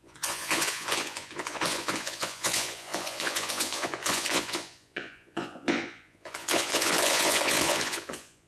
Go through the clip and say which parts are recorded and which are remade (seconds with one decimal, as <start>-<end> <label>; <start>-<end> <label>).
0.0-8.5 remade